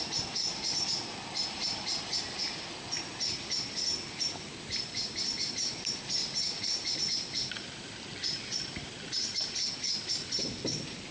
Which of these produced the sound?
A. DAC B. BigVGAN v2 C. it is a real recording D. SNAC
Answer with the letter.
C